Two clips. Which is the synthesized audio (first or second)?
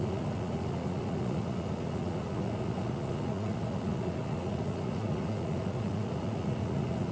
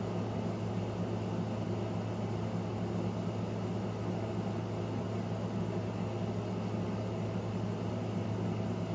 first